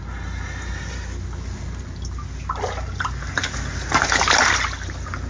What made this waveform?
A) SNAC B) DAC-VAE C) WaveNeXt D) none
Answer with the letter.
D